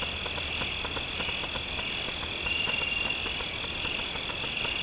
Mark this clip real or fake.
real